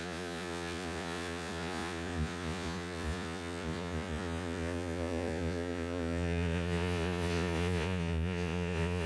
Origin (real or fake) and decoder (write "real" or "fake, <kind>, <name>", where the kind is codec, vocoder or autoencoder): fake, vocoder, Vocos